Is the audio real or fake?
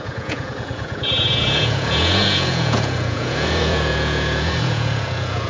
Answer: fake